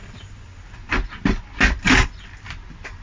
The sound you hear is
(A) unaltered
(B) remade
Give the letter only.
A